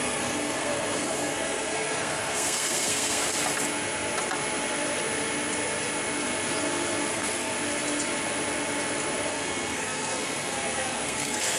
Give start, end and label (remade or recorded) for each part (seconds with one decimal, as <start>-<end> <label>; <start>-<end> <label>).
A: 0.0-3.2 remade; 3.2-7.1 recorded; 7.1-7.5 remade; 7.5-9.3 recorded; 9.3-11.6 remade